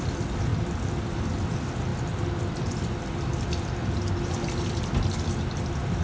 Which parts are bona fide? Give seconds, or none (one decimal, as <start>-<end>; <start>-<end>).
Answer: 0.0-6.0